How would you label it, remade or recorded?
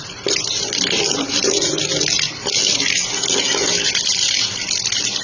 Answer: recorded